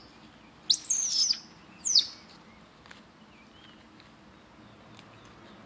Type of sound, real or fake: real